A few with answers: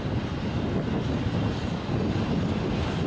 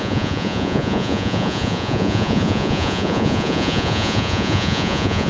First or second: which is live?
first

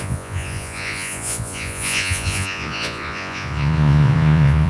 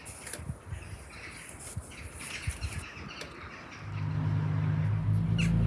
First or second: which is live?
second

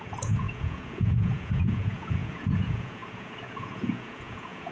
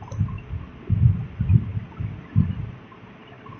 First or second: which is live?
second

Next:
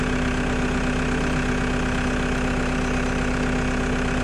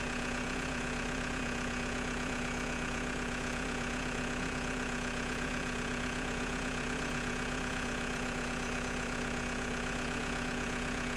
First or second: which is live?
first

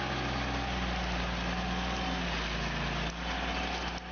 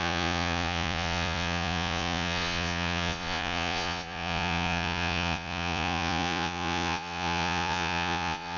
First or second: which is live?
first